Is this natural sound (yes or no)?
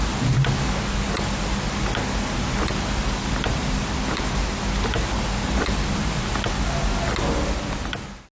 yes